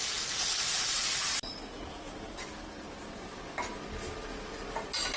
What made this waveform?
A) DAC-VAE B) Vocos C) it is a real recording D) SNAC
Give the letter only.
C